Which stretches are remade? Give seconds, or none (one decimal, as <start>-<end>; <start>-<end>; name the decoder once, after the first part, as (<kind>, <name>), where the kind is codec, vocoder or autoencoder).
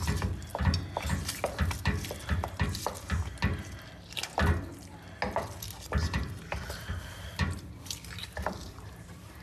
0.0-0.5 (vocoder, BigVGAN v2); 5.3-9.4